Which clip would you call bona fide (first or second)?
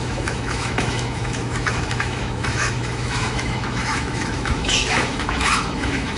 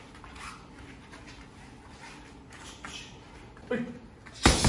second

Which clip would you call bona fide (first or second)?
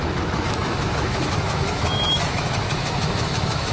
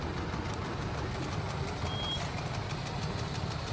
second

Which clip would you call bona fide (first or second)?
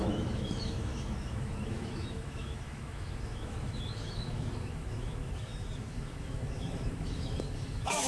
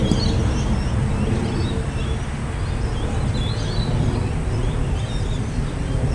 second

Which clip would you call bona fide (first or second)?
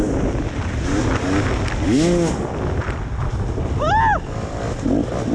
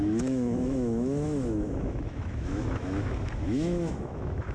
first